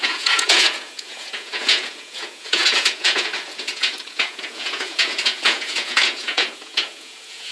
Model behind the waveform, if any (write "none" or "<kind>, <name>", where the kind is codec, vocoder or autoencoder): vocoder, Vocos